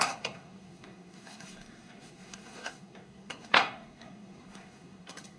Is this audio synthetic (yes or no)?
yes